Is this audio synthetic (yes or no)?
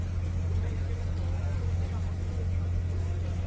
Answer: no